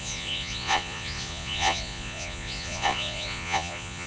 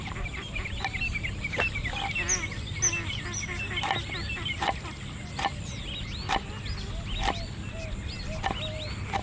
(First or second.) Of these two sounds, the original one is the second